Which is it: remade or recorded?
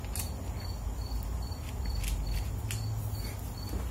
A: recorded